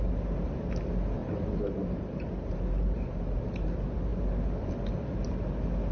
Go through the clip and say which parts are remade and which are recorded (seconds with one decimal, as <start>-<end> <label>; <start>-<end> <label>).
0.0-1.2 recorded; 1.2-3.4 remade; 3.4-5.9 recorded